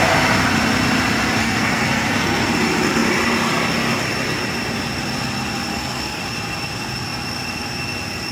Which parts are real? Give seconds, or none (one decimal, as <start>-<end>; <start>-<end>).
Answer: 0.0-1.4; 2.5-5.7; 6.2-8.3